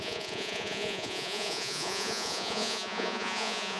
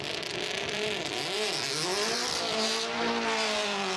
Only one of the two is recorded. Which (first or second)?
second